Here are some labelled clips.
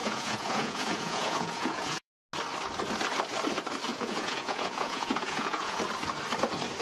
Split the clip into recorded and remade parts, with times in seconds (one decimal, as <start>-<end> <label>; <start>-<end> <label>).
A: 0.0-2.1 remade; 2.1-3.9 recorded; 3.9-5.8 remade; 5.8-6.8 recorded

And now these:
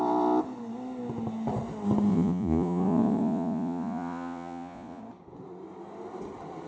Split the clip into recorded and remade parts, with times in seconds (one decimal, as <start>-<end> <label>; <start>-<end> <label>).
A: 0.0-2.1 recorded; 2.1-5.0 remade; 5.0-6.7 recorded

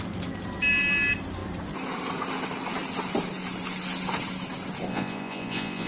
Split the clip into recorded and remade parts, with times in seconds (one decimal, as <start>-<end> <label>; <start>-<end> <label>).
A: 0.0-4.9 recorded; 4.9-5.9 remade